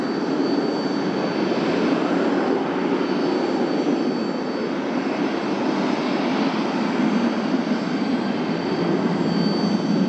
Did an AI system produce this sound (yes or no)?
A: no